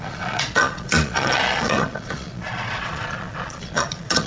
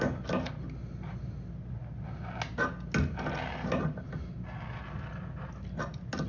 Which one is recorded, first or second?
second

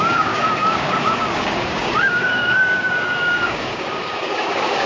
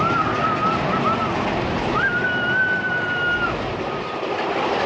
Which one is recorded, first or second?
second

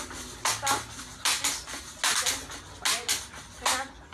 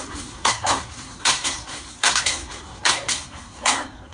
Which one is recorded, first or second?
first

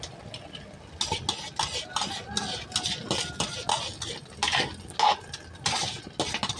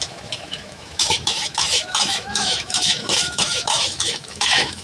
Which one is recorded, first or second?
first